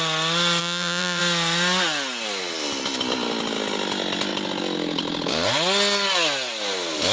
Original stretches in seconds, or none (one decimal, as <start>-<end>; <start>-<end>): 0.0-0.6; 1.2-7.1